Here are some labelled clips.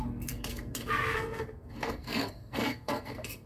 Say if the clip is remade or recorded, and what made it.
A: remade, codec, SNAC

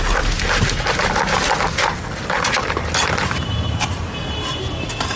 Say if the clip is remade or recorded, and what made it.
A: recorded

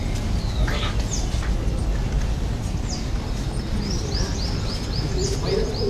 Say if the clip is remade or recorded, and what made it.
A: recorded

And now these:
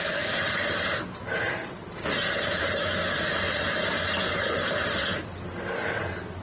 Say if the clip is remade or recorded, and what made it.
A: recorded